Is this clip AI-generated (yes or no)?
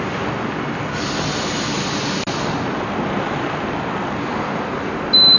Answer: no